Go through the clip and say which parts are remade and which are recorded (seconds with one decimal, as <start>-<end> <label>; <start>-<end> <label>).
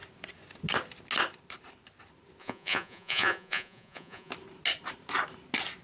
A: 0.0-2.4 recorded; 2.4-4.3 remade; 4.3-5.8 recorded